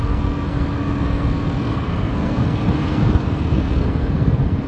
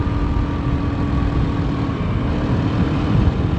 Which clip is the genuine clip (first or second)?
second